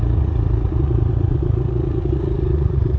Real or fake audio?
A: fake